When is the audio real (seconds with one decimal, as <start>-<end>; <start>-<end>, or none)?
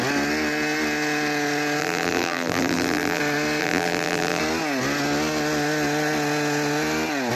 0.0-1.8; 3.2-3.6; 4.4-7.4